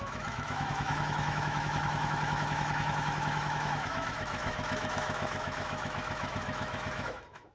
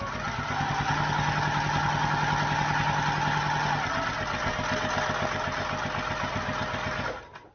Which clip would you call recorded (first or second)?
second